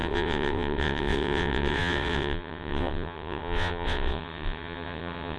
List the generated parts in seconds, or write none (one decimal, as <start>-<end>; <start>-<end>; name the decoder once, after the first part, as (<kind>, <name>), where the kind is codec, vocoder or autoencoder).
0.0-5.4 (vocoder, WaveNeXt)

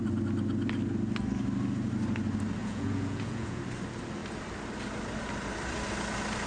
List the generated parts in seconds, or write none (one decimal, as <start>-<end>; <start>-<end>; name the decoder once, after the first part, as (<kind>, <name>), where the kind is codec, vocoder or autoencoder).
2.6-3.6 (vocoder, Vocos)

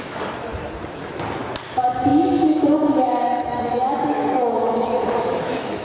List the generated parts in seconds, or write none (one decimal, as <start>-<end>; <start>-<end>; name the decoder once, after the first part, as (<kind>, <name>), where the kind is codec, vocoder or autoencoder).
0.0-0.5 (autoencoder, DAC-VAE); 1.7-5.8

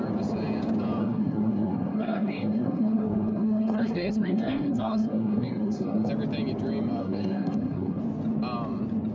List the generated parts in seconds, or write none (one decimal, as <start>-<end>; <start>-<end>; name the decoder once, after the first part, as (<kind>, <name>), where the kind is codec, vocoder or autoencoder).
1.0-6.1 (codec, SNAC); 7.0-8.0

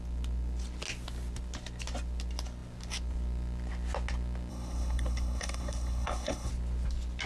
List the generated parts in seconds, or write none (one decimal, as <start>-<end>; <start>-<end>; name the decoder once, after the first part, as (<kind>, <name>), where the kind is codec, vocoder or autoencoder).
4.5-6.5 (codec, HILCodec)